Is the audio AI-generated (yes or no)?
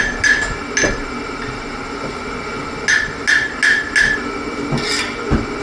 no